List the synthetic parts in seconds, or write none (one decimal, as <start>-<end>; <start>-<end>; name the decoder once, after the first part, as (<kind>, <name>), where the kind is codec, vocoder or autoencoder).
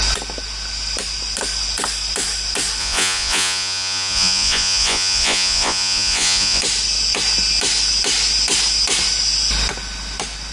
2.8-6.6 (vocoder, Vocos)